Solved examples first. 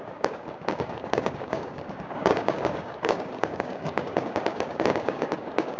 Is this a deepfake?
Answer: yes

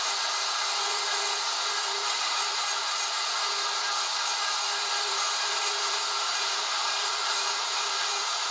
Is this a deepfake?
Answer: yes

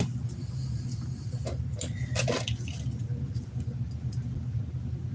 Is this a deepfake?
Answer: no